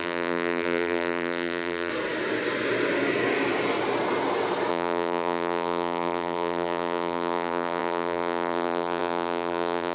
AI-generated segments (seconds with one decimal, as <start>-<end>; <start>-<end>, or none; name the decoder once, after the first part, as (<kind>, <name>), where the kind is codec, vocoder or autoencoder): 0.0-1.9 (vocoder, BigVGAN v2); 4.7-9.9